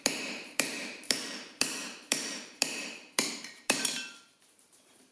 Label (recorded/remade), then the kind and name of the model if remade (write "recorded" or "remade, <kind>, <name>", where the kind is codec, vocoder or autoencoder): remade, vocoder, BigVGAN v2